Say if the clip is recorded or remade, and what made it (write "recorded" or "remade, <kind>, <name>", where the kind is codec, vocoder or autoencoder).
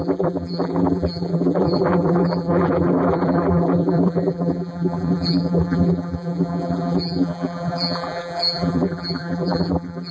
remade, vocoder, BigVGAN v2